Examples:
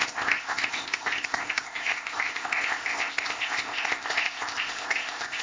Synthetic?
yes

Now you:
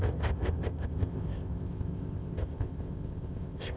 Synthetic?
yes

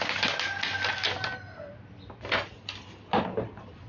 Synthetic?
no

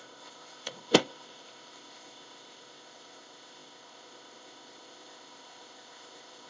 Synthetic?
yes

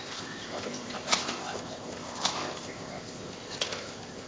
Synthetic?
yes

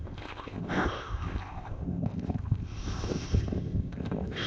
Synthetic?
yes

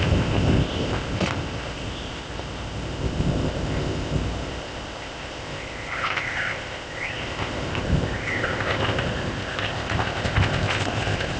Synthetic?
yes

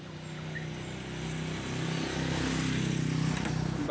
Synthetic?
no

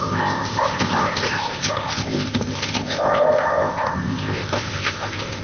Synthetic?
yes